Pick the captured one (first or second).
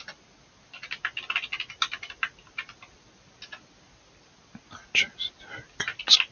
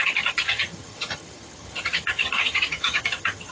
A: first